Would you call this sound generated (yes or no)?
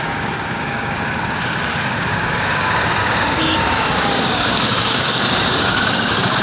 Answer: yes